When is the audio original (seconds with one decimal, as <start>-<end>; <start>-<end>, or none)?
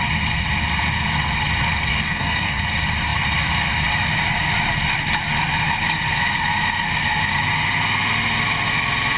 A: 0.0-1.9; 2.6-9.2